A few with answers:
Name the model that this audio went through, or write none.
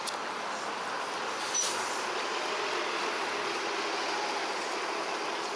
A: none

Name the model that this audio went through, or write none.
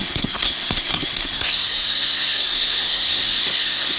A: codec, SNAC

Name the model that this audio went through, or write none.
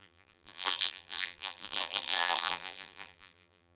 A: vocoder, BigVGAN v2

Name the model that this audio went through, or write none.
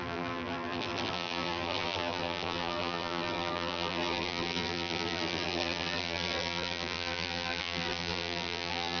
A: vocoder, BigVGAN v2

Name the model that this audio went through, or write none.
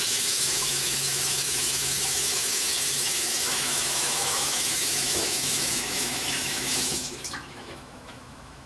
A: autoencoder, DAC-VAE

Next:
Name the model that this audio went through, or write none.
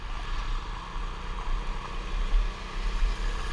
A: none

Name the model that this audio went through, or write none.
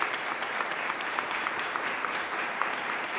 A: vocoder, BigVGAN v2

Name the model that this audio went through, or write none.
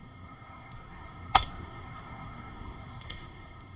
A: codec, SNAC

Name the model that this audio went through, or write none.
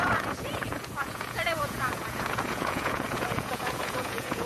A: vocoder, Vocos